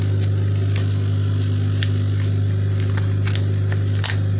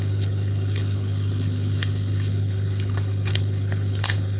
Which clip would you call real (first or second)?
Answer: first